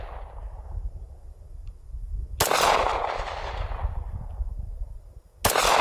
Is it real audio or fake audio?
real